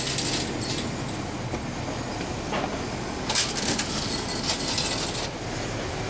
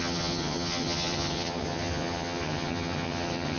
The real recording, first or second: first